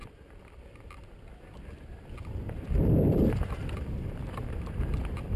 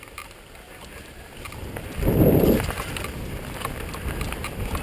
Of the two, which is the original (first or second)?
second